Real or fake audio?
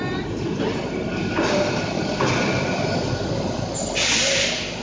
fake